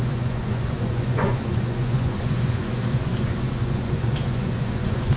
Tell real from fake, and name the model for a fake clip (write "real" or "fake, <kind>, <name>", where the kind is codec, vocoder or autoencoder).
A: fake, vocoder, Vocos